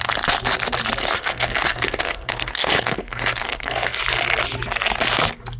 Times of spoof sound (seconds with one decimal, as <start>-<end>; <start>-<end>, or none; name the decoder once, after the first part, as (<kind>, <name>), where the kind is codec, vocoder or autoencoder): 1.0-4.0 (codec, SNAC)